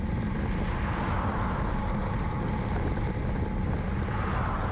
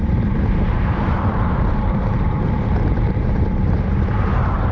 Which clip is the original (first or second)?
first